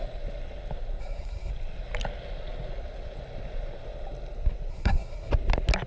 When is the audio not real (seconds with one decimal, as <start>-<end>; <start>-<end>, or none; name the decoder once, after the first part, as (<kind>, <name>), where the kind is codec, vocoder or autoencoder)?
1.0-1.5 (codec, SNAC); 4.7-5.3